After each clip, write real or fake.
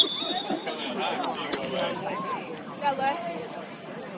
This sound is fake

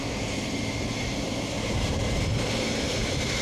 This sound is fake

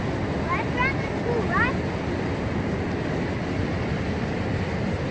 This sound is real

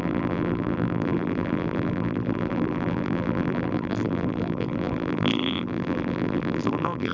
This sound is fake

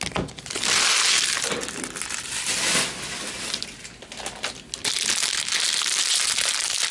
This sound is real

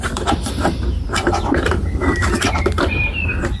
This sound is fake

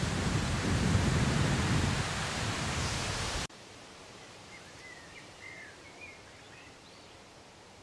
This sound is fake